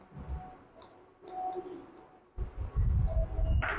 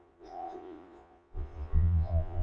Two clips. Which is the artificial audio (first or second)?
second